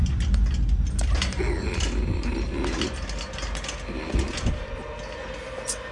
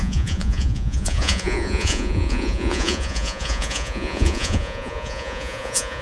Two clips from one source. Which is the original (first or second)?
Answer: first